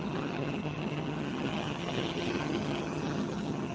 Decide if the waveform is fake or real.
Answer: fake